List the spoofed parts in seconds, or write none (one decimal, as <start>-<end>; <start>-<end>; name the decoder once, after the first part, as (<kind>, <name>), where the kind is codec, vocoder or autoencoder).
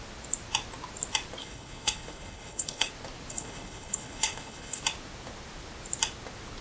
1.4-2.9 (codec, HILCodec); 3.3-4.8